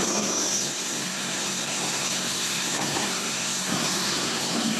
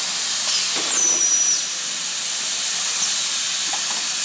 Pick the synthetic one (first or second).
first